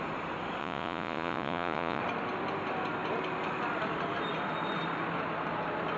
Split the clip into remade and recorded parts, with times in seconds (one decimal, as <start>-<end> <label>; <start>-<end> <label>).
0.0-0.6 recorded; 0.6-2.0 remade; 2.0-6.0 recorded